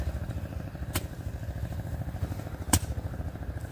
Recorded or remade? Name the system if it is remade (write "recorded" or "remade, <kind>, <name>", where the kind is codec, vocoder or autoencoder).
remade, vocoder, BigVGAN v2